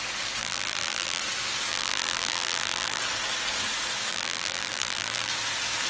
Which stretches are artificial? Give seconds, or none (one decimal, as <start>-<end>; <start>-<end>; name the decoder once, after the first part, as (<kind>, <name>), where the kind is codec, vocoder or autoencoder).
0.4-1.2 (vocoder, BigVGAN v2); 1.7-3.0; 4.1-5.3